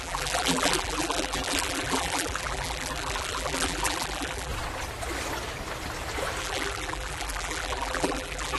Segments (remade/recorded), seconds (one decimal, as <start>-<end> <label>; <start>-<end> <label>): 0.0-4.5 remade; 4.5-6.4 recorded; 6.4-8.6 remade